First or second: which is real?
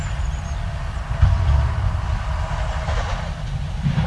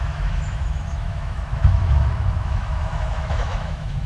first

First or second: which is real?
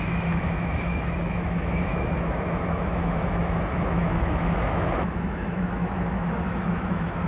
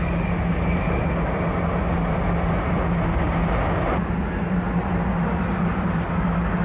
second